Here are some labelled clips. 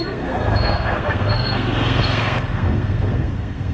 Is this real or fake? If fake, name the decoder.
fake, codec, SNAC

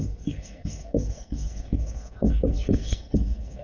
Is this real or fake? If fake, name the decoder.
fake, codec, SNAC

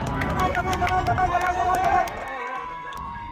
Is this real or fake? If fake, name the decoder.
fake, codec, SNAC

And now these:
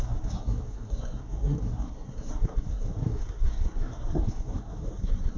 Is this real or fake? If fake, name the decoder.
fake, codec, SNAC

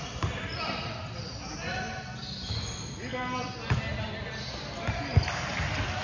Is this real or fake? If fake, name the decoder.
real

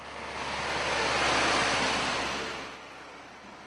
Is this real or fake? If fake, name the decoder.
real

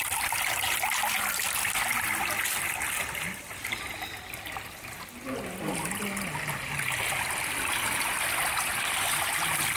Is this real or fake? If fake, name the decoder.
real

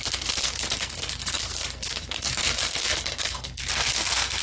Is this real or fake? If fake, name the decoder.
fake, codec, SNAC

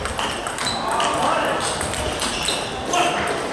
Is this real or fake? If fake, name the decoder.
real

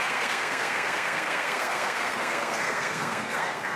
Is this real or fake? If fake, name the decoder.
fake, codec, SNAC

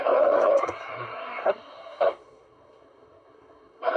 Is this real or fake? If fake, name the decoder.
fake, codec, SNAC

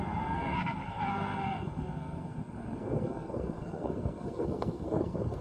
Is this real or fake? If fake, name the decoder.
fake, codec, SNAC